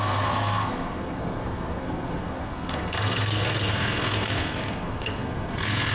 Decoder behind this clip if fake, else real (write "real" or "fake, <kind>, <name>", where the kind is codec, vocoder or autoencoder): fake, codec, SNAC